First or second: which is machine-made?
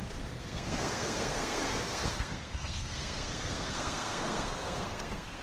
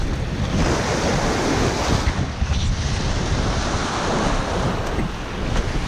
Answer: first